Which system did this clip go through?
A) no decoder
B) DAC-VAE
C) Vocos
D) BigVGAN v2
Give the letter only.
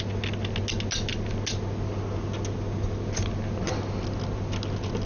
A